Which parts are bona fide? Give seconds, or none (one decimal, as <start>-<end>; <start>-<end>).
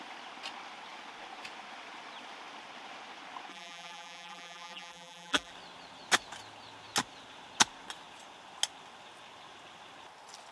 0.0-3.5; 5.5-10.5